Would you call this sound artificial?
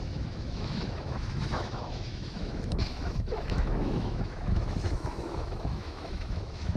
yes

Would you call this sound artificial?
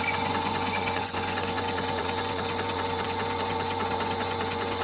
yes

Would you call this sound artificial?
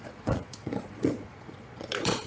yes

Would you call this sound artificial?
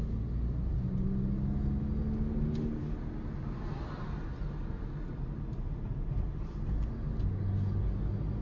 no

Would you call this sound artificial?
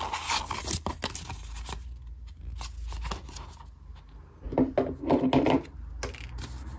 no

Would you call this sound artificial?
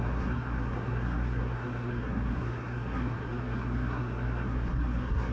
yes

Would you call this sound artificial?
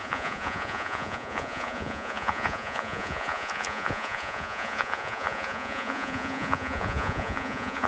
yes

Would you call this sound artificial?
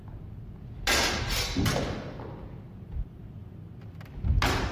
no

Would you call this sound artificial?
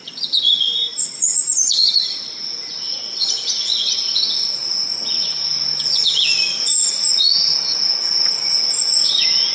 yes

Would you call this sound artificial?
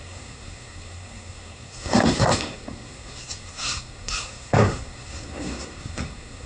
yes